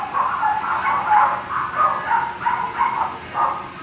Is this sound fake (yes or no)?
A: no